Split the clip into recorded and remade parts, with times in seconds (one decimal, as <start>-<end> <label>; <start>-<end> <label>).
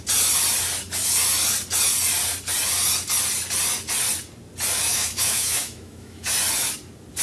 0.0-4.9 recorded; 4.9-6.3 remade; 6.3-7.2 recorded